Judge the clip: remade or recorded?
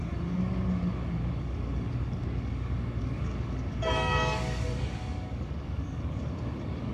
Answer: remade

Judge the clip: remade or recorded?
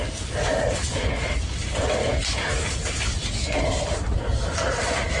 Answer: recorded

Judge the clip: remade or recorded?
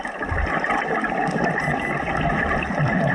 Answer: recorded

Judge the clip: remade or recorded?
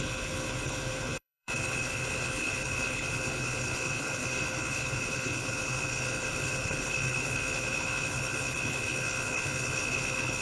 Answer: remade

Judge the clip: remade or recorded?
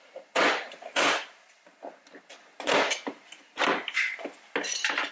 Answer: recorded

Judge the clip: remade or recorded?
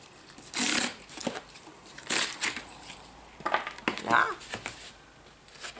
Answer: recorded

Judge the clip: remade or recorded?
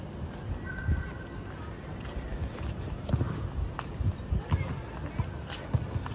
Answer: recorded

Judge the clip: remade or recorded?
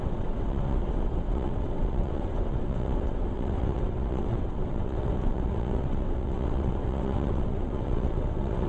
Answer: remade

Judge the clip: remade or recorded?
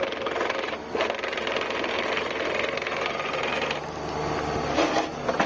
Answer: recorded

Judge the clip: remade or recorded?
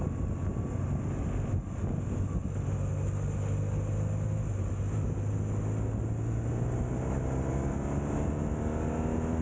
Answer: recorded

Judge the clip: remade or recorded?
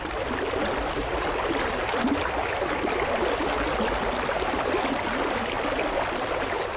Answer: recorded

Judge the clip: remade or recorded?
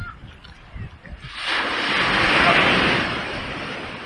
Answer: recorded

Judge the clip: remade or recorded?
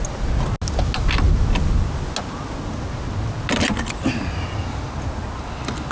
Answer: recorded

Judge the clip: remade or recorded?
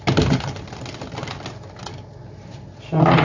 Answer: recorded